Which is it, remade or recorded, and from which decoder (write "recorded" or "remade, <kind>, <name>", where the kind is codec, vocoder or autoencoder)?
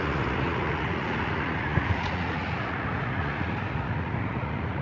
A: remade, vocoder, Vocos